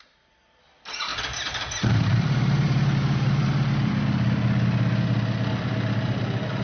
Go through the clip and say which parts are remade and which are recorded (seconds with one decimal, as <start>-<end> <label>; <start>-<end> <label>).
0.0-1.1 recorded; 1.1-3.9 remade; 3.9-6.6 recorded